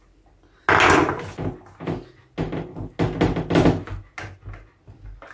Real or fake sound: real